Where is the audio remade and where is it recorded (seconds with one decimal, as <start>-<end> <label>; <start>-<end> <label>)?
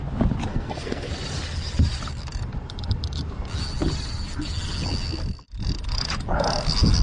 0.0-0.5 recorded; 0.5-1.1 remade; 1.1-7.0 recorded